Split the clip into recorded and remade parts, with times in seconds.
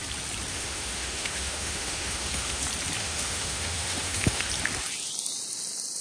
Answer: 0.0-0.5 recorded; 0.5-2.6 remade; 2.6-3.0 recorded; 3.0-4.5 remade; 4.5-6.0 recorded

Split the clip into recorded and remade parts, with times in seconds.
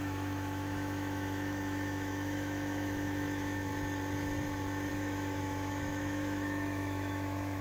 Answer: 0.0-3.7 remade; 3.7-4.9 recorded; 4.9-7.6 remade